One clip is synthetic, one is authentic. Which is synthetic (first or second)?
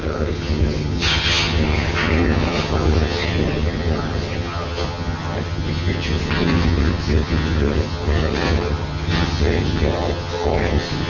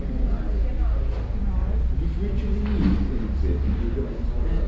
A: first